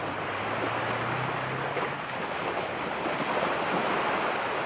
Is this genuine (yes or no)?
yes